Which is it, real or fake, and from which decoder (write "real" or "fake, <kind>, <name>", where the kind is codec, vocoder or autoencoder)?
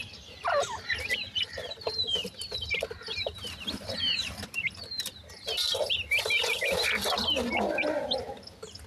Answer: real